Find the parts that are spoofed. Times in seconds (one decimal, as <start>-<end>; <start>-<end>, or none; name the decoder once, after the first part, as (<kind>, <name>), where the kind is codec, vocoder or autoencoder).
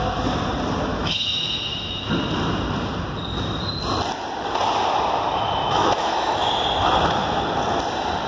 0.9-2.1 (autoencoder, DAC-VAE); 5.6-6.5